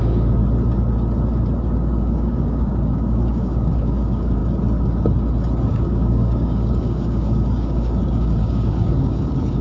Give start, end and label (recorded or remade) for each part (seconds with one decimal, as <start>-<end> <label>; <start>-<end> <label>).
0.0-0.4 remade; 0.4-1.6 recorded; 1.6-4.4 remade; 4.4-5.6 recorded; 5.6-9.6 remade